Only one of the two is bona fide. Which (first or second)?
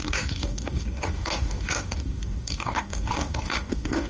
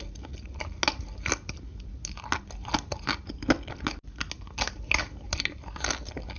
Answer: second